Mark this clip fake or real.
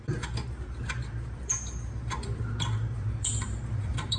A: fake